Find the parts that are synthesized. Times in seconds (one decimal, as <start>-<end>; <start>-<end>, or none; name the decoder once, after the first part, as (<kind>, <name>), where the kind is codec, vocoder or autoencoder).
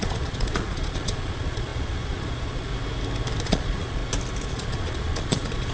0.0-2.7 (vocoder, Vocos); 3.4-4.0; 4.5-5.7